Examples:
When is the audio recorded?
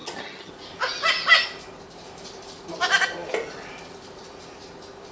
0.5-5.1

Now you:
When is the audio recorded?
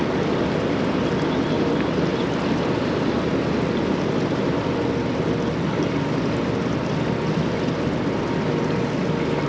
0.0-9.5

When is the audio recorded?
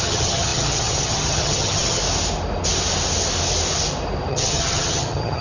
2.0-4.3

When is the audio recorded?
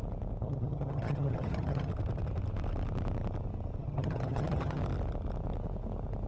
0.0-0.4; 1.9-3.8; 4.8-6.3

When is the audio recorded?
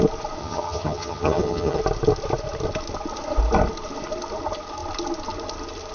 0.0-0.4; 1.8-5.9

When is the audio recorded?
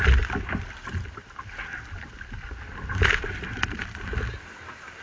0.0-5.0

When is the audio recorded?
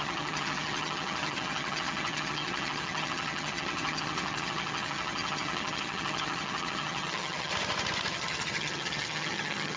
7.5-8.1